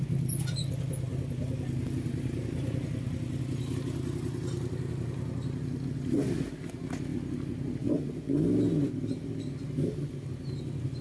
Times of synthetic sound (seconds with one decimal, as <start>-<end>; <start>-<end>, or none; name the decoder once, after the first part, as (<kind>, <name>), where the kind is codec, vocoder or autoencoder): none